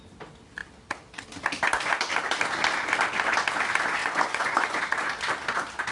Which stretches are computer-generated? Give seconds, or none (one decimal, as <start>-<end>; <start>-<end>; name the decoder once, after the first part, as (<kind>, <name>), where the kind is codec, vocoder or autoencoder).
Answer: 4.0-4.8 (vocoder, Vocos)